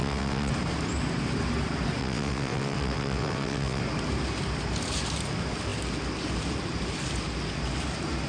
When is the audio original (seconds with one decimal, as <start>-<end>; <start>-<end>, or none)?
0.5-2.0; 3.8-8.3